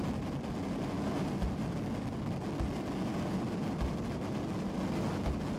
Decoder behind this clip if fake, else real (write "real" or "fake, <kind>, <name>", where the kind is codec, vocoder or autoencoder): real